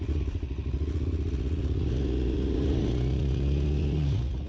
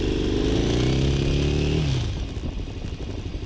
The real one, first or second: second